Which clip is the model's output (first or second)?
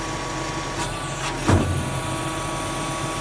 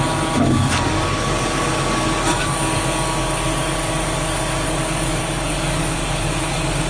second